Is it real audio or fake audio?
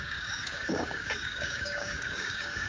fake